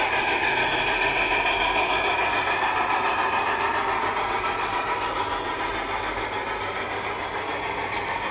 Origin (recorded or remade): recorded